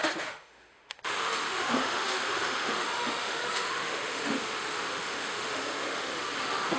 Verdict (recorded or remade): remade